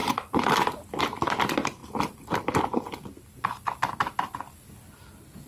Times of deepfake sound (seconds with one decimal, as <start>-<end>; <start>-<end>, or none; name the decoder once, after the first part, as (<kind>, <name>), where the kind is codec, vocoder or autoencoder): 1.8-5.1 (vocoder, BigVGAN v2)